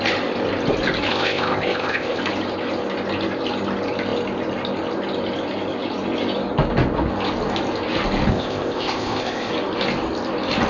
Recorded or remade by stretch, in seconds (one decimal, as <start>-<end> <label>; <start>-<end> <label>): 0.0-1.1 recorded; 1.1-2.2 remade; 2.2-8.3 recorded; 8.3-9.5 remade; 9.5-10.7 recorded